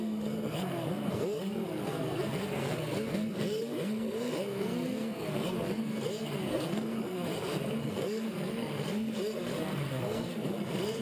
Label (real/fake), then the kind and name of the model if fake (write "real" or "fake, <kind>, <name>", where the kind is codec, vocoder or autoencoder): fake, codec, SNAC